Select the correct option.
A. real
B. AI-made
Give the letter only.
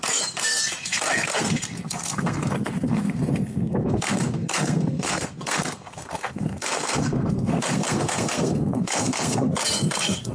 B